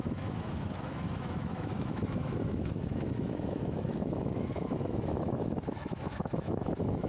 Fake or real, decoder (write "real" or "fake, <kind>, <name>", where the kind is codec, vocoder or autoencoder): fake, autoencoder, DAC-VAE